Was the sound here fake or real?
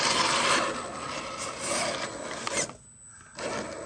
real